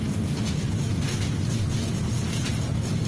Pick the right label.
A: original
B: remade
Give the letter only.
A